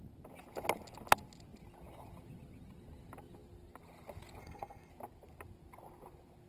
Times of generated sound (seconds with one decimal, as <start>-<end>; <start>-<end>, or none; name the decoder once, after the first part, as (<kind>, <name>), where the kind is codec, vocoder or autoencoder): 4.4-4.9 (codec, SNAC)

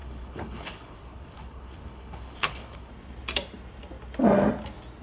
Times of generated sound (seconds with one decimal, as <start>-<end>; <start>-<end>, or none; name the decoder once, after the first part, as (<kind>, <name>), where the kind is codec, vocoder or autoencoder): 0.0-2.9 (codec, HILCodec)

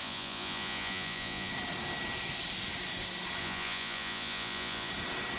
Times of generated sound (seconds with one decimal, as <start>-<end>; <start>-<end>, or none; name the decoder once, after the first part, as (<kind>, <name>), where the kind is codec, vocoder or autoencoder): 0.0-1.5 (vocoder, Vocos); 3.4-4.9